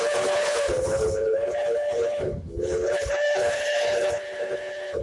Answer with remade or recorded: remade